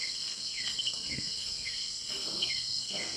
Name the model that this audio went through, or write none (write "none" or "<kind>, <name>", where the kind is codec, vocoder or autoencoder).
codec, SNAC